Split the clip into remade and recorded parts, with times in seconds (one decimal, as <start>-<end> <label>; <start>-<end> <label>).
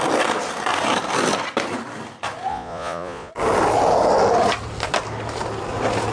0.0-2.5 recorded; 2.5-3.3 remade; 3.3-6.1 recorded